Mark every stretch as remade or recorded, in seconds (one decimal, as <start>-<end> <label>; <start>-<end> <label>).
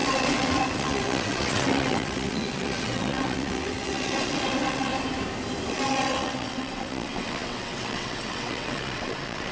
0.0-4.9 remade; 4.9-5.7 recorded; 5.7-9.5 remade